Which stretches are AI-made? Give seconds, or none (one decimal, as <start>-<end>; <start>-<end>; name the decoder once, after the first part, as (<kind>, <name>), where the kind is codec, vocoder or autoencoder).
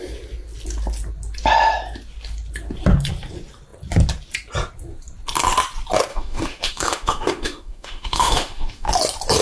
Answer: 6.1-8.9 (autoencoder, DAC-VAE)